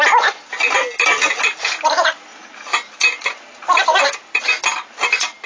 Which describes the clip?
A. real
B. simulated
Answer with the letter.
A